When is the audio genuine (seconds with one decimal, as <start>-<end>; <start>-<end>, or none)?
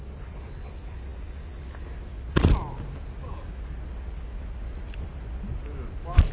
0.0-6.3